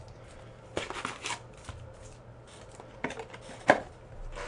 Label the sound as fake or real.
real